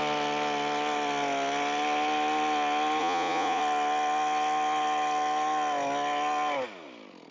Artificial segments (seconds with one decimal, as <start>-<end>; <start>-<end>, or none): 3.0-3.6